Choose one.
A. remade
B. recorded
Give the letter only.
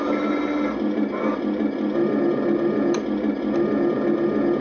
B